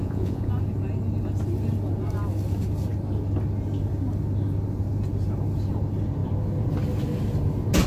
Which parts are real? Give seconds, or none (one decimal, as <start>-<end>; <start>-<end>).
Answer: 0.5-7.9